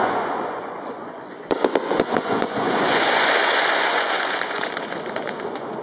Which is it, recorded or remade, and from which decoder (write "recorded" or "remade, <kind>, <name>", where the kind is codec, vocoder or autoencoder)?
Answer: remade, vocoder, Vocos